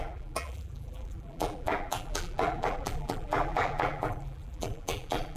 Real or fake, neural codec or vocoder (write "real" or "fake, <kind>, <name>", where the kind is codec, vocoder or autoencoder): fake, vocoder, BigVGAN v2